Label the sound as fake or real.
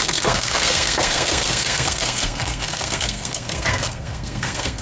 fake